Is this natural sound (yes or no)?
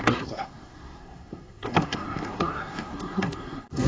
no